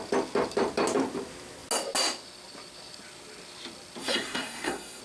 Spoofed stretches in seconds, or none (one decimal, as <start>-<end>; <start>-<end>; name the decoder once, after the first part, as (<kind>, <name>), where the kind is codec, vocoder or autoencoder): 4.0-5.0 (codec, SNAC)